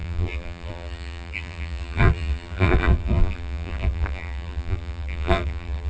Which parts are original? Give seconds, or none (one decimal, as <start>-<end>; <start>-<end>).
none